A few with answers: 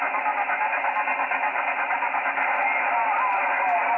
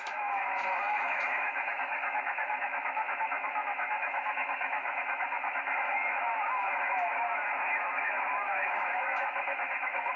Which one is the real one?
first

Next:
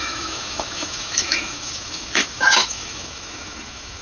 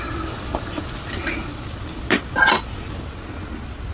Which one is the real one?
second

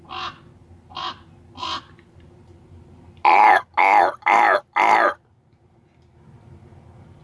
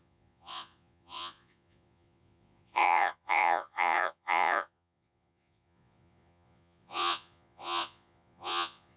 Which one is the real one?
first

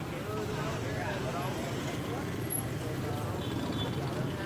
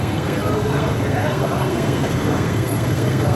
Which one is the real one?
first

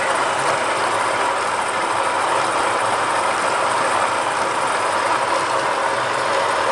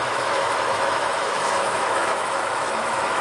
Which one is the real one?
first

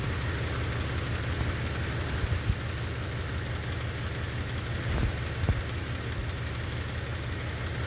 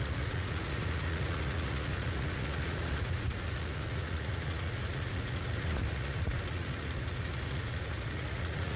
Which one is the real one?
first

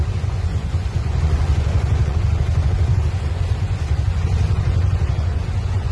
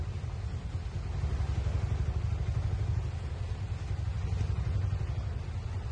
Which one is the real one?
second